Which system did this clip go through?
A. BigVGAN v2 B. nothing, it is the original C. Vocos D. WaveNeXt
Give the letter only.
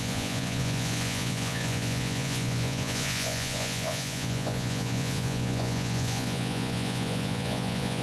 C